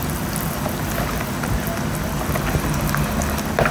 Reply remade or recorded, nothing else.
recorded